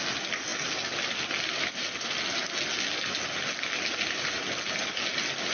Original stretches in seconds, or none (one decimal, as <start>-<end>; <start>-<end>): 0.0-5.5